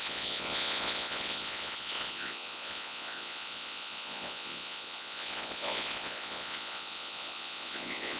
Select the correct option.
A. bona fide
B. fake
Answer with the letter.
B